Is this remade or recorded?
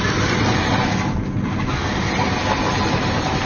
recorded